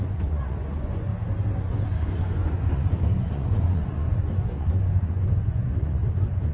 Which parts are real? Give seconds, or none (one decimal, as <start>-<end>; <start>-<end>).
1.1-1.6